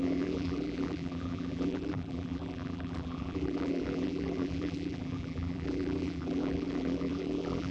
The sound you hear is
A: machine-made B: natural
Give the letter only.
A